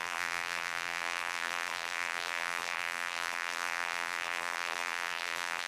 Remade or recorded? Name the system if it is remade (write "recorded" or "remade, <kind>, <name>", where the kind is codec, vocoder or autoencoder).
remade, vocoder, BigVGAN v2